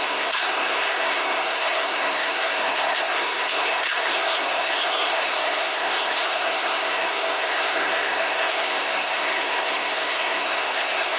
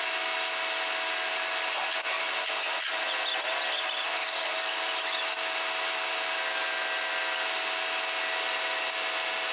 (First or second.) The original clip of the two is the second